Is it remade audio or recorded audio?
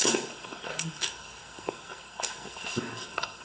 remade